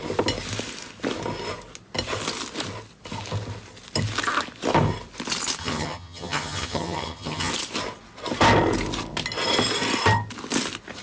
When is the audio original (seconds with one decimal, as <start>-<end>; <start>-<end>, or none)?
0.0-5.6; 7.5-11.0

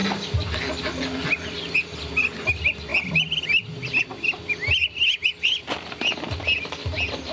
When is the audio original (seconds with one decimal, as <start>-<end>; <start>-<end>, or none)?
0.0-7.3

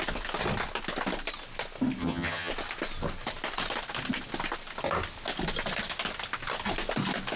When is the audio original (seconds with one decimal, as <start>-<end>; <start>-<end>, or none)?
0.0-2.0; 2.5-7.4